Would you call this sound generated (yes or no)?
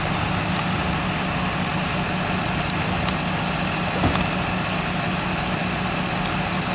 no